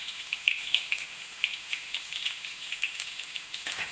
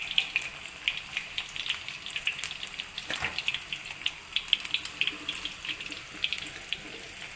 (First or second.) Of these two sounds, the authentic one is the second